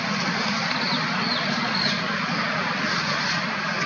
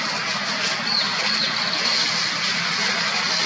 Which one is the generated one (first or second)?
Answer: first